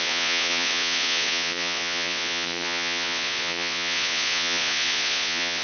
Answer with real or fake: fake